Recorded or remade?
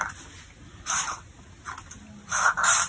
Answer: recorded